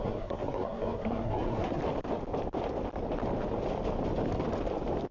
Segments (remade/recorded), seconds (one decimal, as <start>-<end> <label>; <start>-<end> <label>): 0.0-1.8 remade; 1.8-5.1 recorded